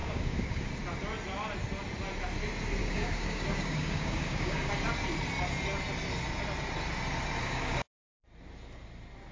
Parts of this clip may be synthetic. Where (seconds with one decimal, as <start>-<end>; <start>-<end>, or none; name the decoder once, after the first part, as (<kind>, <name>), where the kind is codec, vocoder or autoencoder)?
0.0-0.7 (codec, DAC); 2.8-4.7; 7.4-8.2